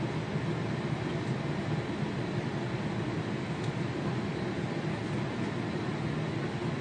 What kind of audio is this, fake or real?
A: real